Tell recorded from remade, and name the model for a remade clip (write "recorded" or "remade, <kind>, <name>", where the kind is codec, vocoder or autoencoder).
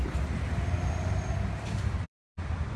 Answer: remade, vocoder, BigVGAN v2